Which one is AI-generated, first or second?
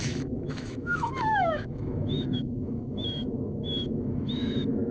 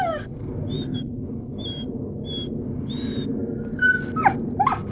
first